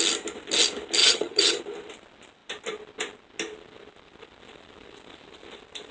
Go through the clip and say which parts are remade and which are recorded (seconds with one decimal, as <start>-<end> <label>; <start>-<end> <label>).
0.0-1.0 recorded; 1.0-1.6 remade; 1.6-5.9 recorded

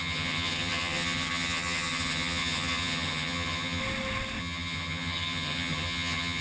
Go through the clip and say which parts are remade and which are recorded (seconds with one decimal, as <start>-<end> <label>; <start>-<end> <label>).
0.0-3.8 remade; 3.8-4.4 recorded; 4.4-6.4 remade